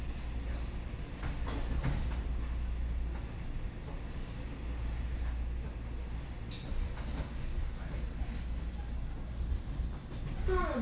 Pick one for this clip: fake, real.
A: real